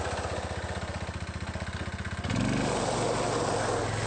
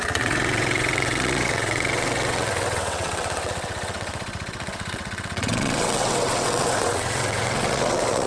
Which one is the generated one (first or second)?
second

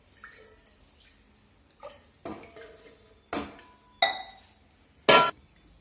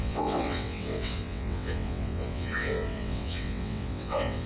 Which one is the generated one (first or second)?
second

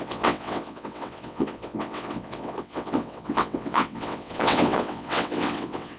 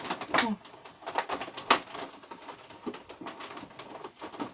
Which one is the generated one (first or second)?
first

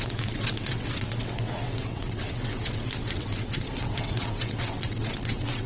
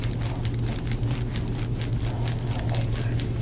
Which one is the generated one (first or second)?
first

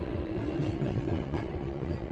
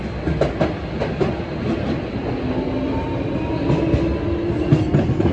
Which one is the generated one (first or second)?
first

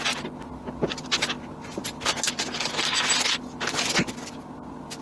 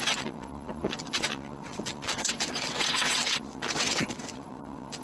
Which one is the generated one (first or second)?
second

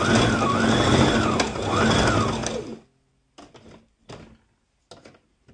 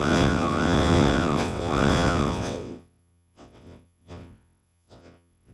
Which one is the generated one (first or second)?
second